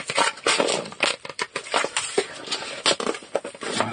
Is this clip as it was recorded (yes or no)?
yes